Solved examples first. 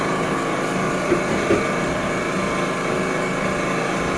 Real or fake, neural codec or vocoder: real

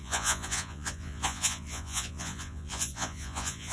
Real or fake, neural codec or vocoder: fake, vocoder, Vocos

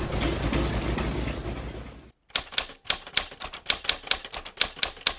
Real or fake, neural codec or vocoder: real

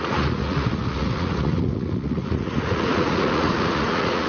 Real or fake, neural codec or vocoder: fake, vocoder, Vocos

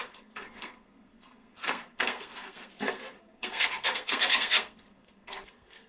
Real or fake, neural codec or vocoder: fake, codec, SNAC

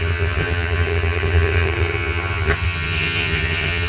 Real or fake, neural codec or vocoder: fake, vocoder, HiFi-GAN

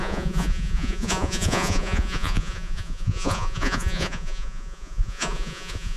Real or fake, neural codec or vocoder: fake, vocoder, Vocos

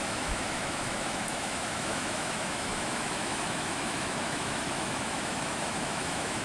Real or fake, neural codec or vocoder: fake, autoencoder, DAC-VAE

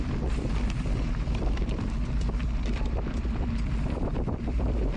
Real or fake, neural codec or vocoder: fake, vocoder, BigVGAN v2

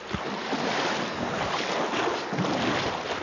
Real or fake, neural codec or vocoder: real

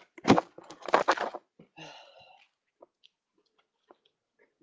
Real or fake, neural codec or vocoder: real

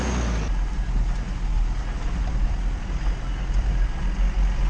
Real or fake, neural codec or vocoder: real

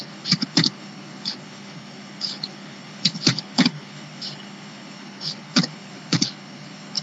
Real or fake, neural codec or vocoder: fake, codec, HILCodec